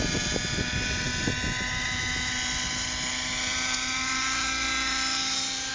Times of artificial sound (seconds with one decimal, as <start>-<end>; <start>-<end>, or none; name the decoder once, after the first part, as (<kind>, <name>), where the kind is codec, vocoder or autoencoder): 0.0-1.1 (vocoder, BigVGAN v2); 3.1-5.7